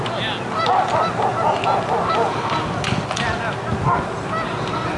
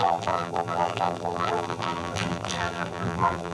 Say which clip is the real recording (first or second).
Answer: first